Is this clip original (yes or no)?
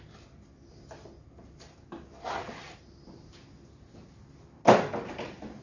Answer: yes